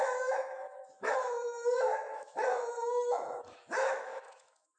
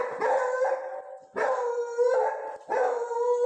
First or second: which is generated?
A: first